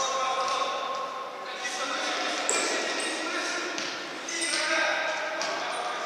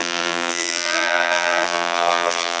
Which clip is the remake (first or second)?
second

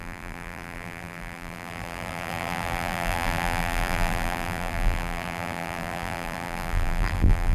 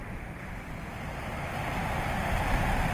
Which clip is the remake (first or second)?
first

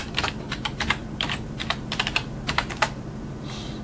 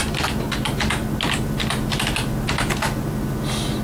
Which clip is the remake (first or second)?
first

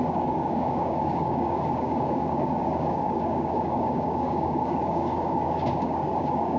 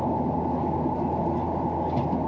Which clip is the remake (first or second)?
first